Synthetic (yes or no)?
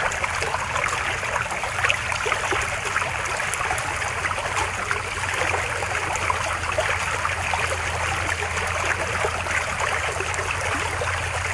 no